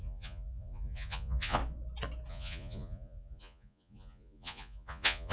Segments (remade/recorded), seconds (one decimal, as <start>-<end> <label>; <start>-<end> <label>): 0.0-1.6 remade; 1.6-2.3 recorded; 2.3-5.3 remade